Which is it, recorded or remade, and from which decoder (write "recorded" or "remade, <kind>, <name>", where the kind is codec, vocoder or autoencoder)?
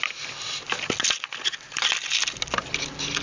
recorded